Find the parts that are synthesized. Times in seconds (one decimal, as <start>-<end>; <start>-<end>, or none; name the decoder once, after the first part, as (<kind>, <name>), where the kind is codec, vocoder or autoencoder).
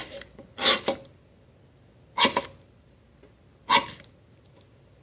none